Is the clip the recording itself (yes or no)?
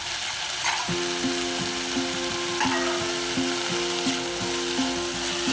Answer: yes